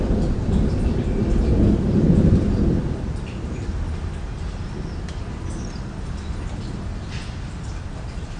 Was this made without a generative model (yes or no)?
yes